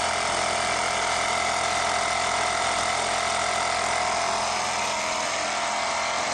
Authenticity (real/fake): real